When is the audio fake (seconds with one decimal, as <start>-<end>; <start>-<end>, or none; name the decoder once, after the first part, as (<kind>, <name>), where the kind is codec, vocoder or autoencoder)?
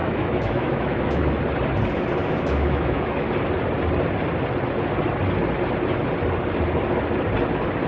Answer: 0.0-1.4 (autoencoder, DAC-VAE); 2.2-3.3